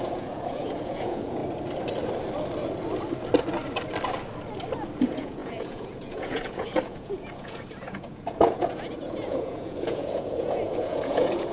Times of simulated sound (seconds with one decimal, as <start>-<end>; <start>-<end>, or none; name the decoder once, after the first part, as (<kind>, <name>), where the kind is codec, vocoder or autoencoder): 0.0-1.4 (vocoder, Vocos); 5.0-11.5